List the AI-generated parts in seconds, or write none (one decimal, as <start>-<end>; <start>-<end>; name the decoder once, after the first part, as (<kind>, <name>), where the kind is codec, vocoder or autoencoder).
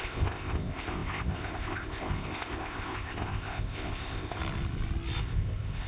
0.0-4.4 (codec, ZipCodec); 5.2-5.9